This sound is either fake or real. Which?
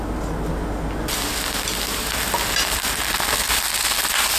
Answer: real